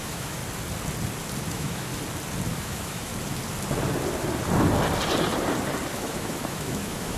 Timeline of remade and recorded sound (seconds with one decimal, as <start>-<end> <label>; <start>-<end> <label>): 0.0-0.4 remade; 0.4-1.5 recorded; 1.5-1.9 remade; 1.9-2.5 recorded; 2.5-3.1 remade; 3.1-5.9 recorded; 5.9-7.2 remade

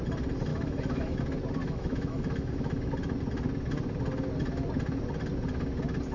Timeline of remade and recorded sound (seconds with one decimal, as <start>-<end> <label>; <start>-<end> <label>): 0.0-0.5 recorded; 0.5-1.2 remade; 1.2-1.6 recorded; 1.6-2.9 remade; 2.9-6.1 recorded